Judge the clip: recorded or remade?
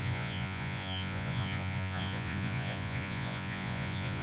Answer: remade